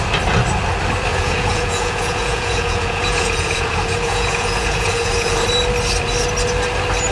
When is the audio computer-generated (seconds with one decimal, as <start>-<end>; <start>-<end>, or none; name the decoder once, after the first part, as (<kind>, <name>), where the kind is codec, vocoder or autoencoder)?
1.1-5.4 (vocoder, Vocos)